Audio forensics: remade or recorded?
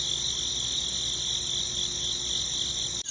recorded